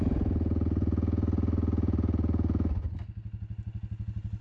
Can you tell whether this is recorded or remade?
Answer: recorded